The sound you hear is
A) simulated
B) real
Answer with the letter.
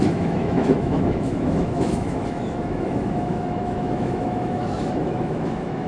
A